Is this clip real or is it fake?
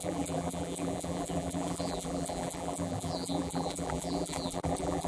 fake